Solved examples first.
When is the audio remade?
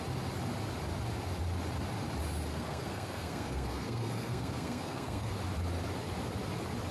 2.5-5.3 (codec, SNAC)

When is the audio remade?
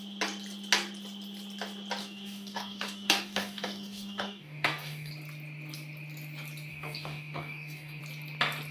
2.0-5.1 (codec, DAC); 6.7-8.0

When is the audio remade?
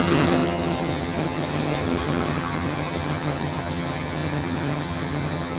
0.0-5.6 (vocoder, HiFi-GAN)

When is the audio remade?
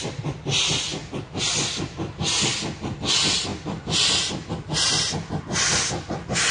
none